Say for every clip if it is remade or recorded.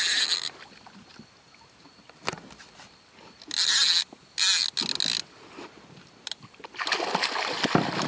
recorded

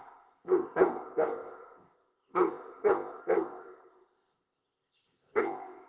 remade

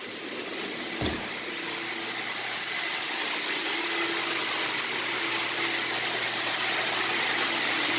recorded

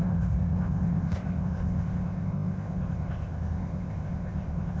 remade